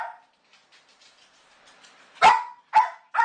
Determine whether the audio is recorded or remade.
recorded